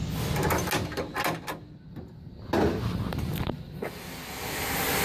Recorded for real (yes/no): yes